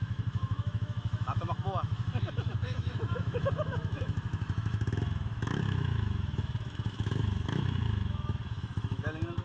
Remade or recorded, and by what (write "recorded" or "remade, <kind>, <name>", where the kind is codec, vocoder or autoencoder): remade, autoencoder, DAC-VAE